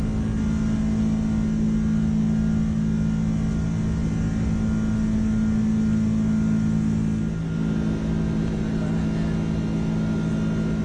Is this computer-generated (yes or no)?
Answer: no